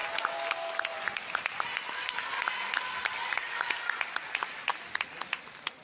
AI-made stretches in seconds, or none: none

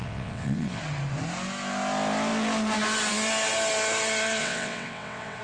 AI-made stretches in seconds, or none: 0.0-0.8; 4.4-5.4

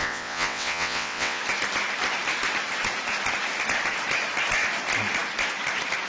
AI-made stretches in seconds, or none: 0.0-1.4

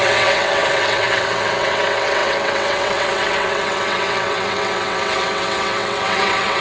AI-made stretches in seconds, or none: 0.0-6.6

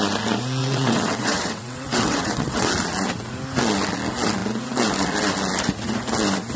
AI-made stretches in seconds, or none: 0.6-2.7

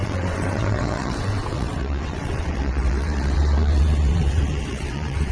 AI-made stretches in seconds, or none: 0.0-5.3

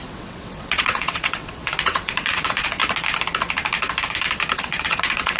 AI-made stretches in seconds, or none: 0.0-2.8; 4.6-5.4

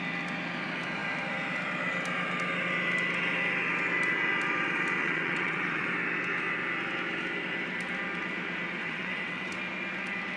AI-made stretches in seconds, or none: 5.0-5.9; 8.8-9.5